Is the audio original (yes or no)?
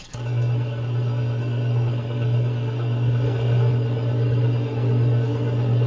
no